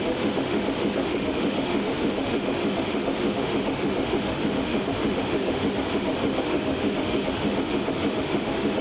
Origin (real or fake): fake